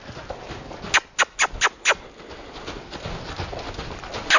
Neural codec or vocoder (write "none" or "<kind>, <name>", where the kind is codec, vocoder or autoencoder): none